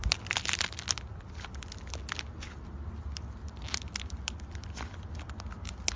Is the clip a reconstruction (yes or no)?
no